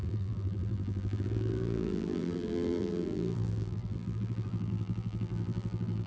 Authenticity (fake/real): fake